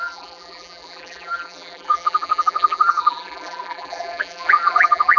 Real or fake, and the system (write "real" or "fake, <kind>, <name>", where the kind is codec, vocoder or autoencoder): fake, vocoder, BigVGAN v2